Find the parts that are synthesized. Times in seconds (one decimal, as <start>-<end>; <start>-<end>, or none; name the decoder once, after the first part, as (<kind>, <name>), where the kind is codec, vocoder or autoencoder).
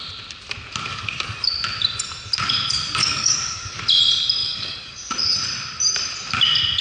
0.9-1.5 (codec, DAC); 3.0-3.8; 4.4-5.1